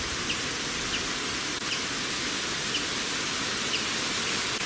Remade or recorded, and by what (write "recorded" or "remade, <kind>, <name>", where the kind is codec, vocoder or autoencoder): recorded